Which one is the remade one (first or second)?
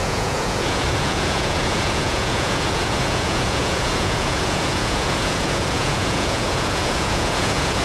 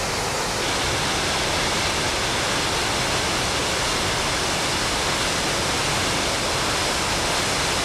first